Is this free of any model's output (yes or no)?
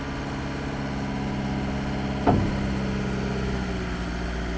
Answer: yes